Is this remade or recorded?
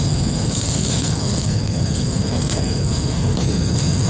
remade